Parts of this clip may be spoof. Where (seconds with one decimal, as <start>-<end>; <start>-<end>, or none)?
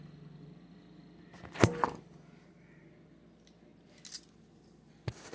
none